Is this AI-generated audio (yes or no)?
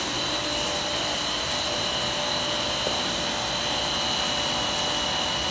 no